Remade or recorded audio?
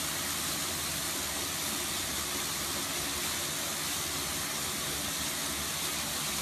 recorded